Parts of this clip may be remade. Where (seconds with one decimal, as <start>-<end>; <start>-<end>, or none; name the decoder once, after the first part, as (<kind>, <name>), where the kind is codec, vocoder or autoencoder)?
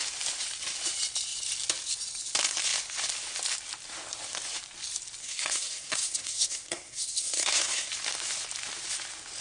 5.2-7.9 (codec, SNAC)